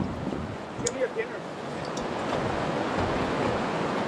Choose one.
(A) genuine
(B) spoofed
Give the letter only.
B